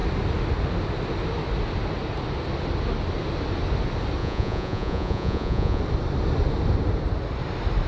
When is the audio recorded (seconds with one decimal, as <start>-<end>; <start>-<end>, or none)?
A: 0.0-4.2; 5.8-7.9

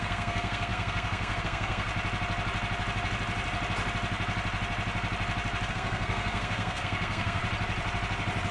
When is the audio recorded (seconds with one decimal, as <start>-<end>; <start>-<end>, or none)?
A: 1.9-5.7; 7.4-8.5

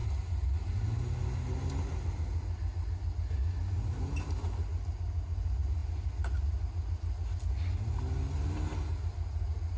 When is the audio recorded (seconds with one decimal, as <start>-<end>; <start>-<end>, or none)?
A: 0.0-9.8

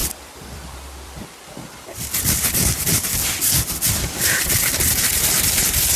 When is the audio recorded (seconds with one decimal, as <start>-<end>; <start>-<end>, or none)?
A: none

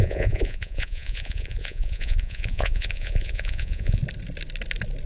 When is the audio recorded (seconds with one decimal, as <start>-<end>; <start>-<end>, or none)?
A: 4.0-5.1